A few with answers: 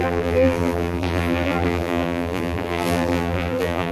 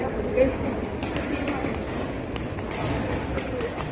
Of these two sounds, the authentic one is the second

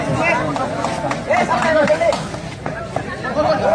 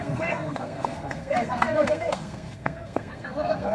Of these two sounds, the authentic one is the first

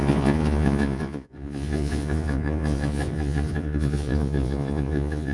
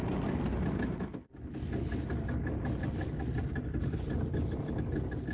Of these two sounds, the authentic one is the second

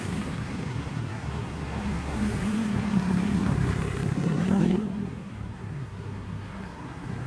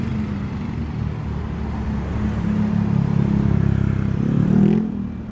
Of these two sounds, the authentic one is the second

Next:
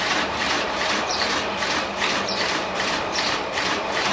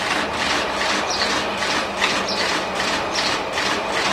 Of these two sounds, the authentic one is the second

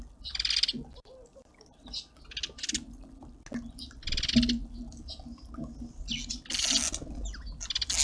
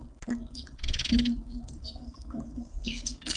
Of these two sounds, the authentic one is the first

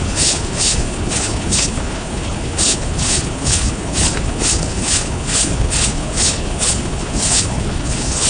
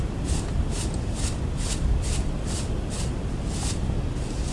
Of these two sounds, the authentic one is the second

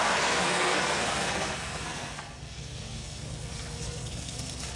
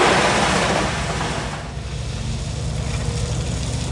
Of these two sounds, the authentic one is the second